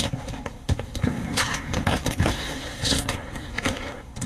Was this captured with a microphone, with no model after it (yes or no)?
no